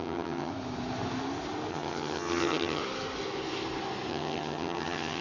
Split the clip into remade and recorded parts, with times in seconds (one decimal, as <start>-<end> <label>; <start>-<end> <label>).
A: 0.0-0.5 remade; 0.5-1.7 recorded; 1.7-2.8 remade; 2.8-4.1 recorded; 4.1-5.2 remade